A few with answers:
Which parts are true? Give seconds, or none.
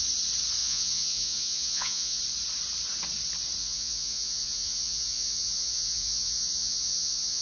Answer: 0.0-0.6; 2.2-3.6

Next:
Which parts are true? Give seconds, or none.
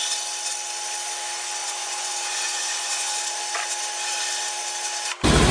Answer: 0.0-1.6; 3.1-5.5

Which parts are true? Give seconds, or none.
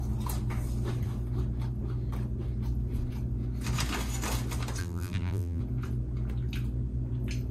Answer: 0.0-4.8; 5.6-7.5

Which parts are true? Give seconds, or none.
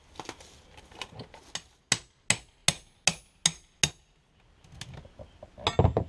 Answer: 0.0-6.1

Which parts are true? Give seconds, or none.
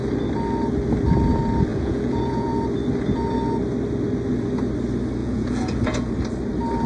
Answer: 0.0-1.7; 2.5-5.2; 6.1-6.9